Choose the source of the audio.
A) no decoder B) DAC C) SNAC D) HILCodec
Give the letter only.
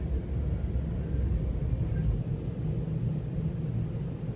A